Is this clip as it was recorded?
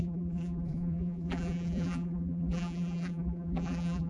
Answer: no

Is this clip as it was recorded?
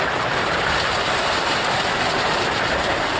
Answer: no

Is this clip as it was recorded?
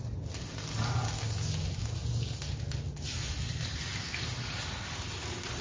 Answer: yes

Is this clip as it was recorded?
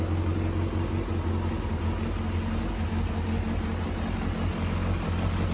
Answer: yes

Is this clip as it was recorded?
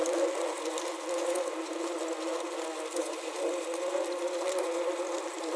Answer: yes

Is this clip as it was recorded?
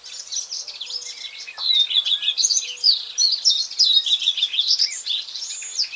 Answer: yes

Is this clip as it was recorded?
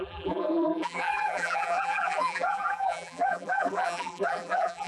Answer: no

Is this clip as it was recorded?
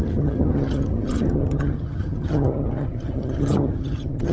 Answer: no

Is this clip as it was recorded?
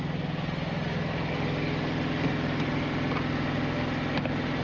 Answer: yes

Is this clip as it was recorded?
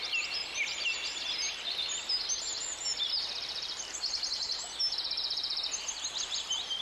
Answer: yes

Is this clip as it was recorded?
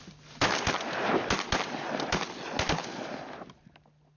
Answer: yes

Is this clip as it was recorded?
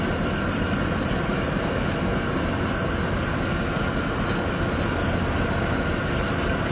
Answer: yes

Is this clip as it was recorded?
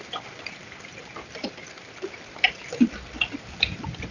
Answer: yes